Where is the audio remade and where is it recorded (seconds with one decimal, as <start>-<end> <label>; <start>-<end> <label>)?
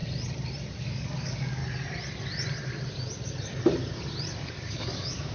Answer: 0.0-0.8 recorded; 0.8-1.6 remade; 1.6-4.4 recorded; 4.4-5.3 remade